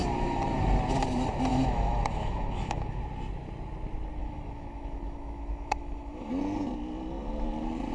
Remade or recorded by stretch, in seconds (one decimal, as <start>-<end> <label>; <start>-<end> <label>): 0.0-1.5 recorded; 1.5-3.0 remade; 3.0-4.2 recorded; 4.2-6.3 remade; 6.3-7.9 recorded